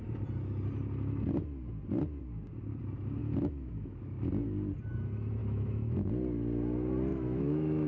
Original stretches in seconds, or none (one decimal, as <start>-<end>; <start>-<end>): 0.0-3.2; 4.0-5.4; 6.1-7.1